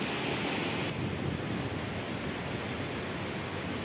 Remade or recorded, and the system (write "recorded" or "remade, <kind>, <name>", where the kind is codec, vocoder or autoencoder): recorded